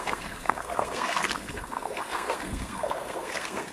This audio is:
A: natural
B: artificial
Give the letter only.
B